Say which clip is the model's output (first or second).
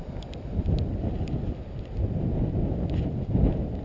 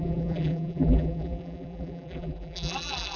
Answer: second